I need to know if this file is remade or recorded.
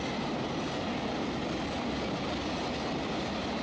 recorded